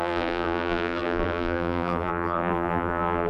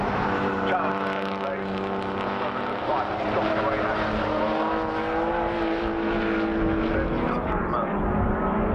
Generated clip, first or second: first